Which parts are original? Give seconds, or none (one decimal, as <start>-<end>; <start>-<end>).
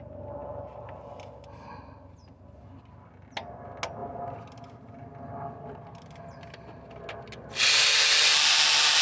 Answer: 0.0-9.0